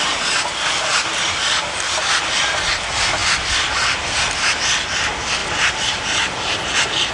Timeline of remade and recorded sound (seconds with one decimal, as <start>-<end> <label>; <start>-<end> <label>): 0.0-0.9 recorded; 0.9-2.4 remade; 2.4-3.2 recorded; 3.2-5.0 remade; 5.0-5.4 recorded; 5.4-7.1 remade